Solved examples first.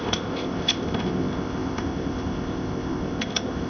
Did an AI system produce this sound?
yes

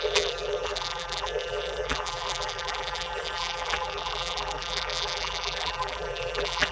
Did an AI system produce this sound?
yes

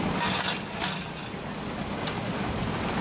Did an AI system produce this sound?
no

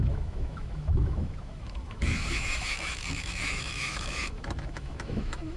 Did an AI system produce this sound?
yes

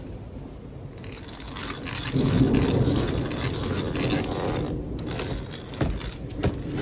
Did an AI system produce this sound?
no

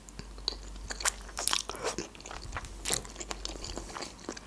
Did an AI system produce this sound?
no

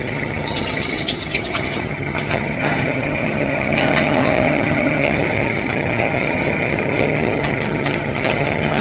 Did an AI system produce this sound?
yes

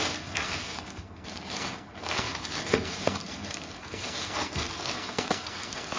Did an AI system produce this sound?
yes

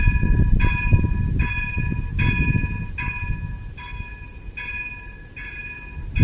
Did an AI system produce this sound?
no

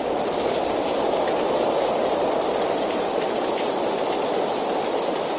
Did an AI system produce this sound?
no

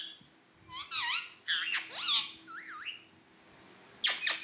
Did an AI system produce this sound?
no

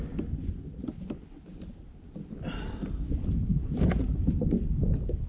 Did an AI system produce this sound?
no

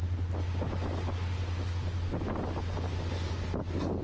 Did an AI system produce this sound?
no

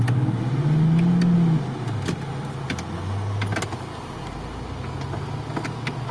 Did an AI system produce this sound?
no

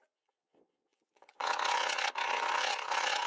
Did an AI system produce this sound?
yes